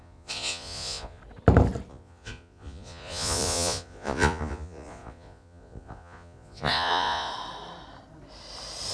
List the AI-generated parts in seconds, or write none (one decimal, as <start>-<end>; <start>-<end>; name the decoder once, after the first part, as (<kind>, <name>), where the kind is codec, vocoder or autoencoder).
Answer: 0.0-1.2 (vocoder, Vocos); 1.9-7.3